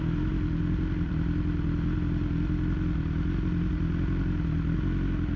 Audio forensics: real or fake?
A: real